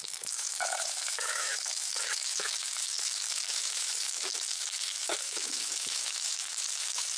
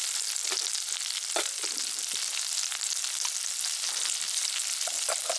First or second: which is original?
second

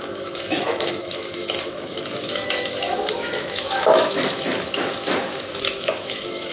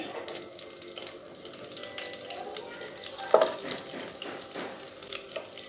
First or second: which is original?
second